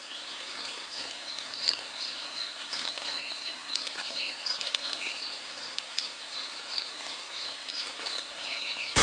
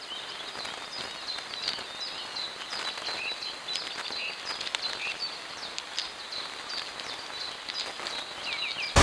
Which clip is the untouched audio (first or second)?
second